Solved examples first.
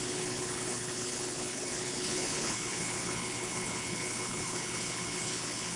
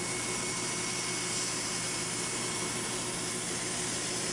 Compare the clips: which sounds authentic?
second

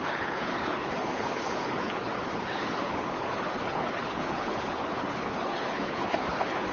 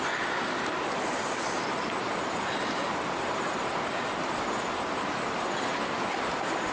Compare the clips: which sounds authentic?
second